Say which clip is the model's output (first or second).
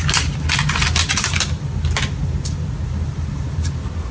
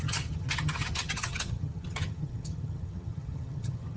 second